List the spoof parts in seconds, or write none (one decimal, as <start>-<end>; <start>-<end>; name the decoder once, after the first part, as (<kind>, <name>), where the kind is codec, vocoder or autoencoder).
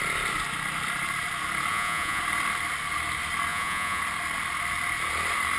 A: 1.7-2.2 (vocoder, Vocos); 3.5-4.0